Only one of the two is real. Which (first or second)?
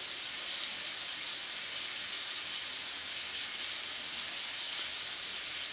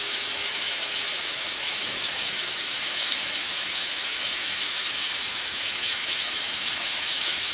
first